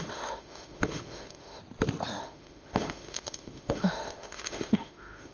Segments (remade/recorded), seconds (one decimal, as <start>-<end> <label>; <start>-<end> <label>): 0.0-1.6 remade; 1.6-2.2 recorded; 2.2-5.3 remade